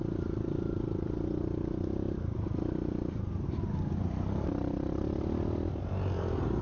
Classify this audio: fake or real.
real